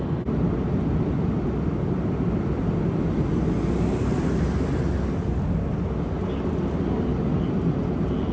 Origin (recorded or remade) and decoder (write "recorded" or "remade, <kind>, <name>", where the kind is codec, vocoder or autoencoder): recorded